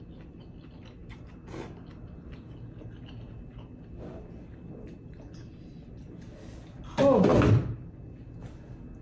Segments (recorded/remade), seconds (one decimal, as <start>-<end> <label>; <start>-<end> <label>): 0.0-9.0 recorded